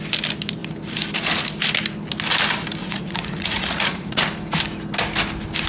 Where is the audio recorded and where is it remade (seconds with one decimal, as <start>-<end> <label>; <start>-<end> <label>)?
0.0-2.8 recorded; 2.8-4.2 remade; 4.2-5.7 recorded